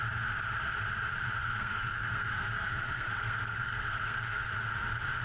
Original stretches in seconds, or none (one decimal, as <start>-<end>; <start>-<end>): 0.0-1.4; 4.5-5.2